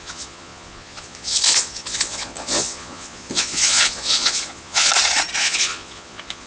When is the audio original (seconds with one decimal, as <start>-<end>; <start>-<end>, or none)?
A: 4.9-5.4